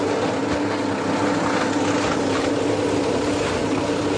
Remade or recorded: recorded